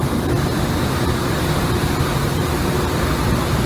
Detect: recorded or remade remade